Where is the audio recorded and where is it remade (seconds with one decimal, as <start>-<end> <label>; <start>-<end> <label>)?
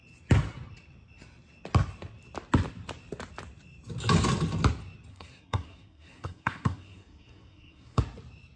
0.0-5.1 recorded; 5.1-8.0 remade; 8.0-8.6 recorded